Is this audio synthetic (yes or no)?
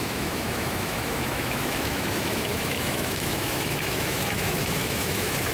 yes